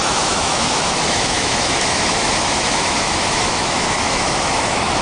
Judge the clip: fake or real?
fake